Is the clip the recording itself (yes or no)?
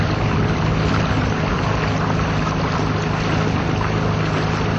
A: yes